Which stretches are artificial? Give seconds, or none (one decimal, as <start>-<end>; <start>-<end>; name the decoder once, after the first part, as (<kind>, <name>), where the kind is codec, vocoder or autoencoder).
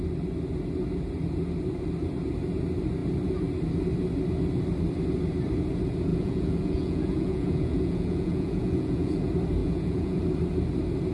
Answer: 6.1-9.2 (vocoder, Vocos); 9.6-10.2